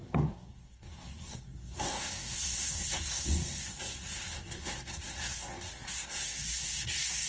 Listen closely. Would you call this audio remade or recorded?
remade